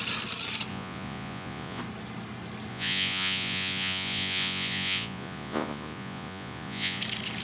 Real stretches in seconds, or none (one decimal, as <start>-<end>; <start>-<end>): 0.0-0.7; 1.8-2.7; 7.0-7.4